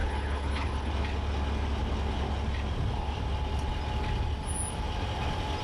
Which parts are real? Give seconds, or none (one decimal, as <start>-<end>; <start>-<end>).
0.9-5.6